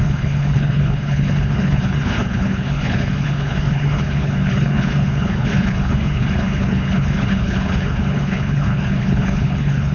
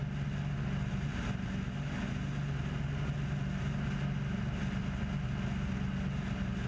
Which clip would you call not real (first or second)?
first